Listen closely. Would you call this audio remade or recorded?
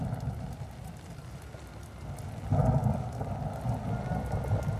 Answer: recorded